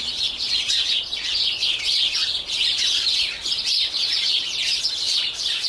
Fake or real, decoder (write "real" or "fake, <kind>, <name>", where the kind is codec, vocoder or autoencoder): fake, vocoder, Vocos